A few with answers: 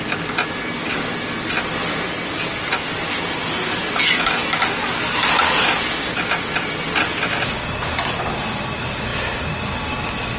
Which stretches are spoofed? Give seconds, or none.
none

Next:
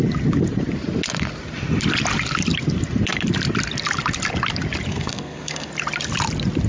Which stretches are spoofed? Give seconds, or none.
4.9-5.7 (codec, SNAC)

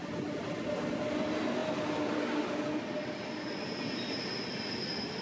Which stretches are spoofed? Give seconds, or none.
none

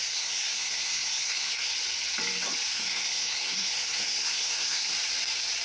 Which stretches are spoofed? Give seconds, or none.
0.0-1.7 (codec, SNAC); 2.7-4.9